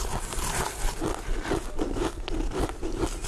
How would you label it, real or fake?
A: real